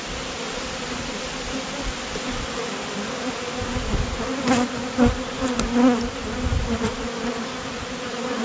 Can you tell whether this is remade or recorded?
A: recorded